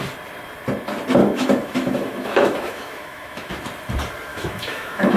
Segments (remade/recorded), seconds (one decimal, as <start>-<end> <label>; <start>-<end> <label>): 0.0-1.2 recorded; 1.2-3.5 remade; 3.5-4.3 recorded; 4.3-5.2 remade